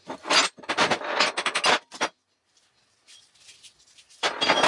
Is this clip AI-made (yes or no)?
no